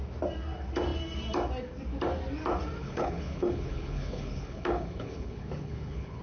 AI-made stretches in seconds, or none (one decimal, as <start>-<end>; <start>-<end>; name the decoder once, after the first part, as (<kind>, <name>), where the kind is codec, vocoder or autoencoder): 2.8-6.2 (codec, HILCodec)